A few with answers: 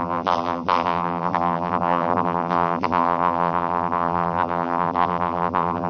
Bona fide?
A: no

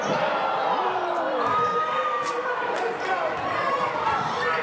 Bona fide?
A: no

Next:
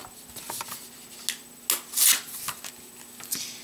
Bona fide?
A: yes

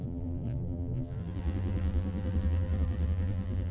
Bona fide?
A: no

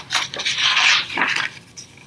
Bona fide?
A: no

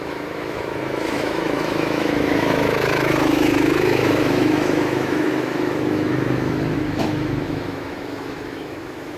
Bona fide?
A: no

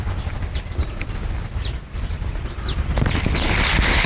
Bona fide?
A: yes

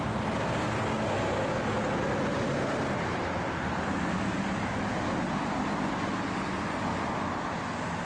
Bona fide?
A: yes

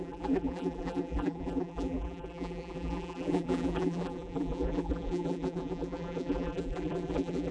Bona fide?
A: no